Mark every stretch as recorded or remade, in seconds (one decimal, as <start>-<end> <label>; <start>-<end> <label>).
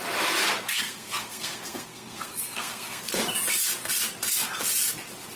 0.0-0.7 recorded; 0.7-3.0 remade; 3.0-5.4 recorded